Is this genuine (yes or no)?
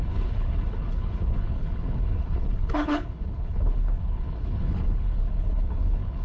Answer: no